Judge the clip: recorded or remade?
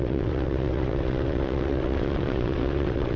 remade